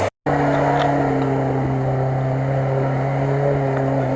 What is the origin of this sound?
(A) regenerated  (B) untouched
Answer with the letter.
B